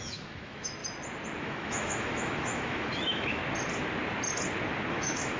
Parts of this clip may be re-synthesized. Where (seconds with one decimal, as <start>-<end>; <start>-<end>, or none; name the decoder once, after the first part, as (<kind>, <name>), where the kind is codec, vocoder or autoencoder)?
0.0-0.8 (autoencoder, DAC-VAE); 1.4-3.4; 4.9-5.4